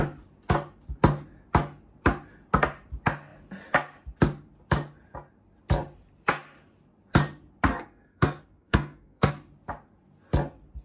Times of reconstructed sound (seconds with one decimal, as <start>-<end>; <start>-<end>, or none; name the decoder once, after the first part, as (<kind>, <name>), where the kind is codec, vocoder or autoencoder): 7.7-9.3 (codec, SNAC)

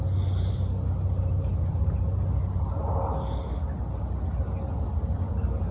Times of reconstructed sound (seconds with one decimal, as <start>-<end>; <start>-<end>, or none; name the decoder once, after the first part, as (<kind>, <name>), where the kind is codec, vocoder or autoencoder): none

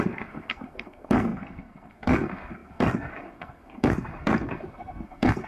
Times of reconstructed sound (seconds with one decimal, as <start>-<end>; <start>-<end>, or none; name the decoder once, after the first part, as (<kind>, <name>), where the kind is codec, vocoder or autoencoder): 0.0-5.5 (codec, SNAC)